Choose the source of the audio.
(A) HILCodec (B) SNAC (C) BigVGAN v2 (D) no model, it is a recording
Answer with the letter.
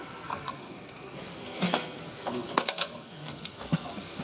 B